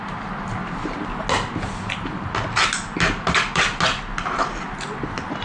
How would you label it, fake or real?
real